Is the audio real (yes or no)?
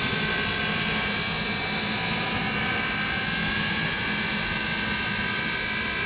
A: yes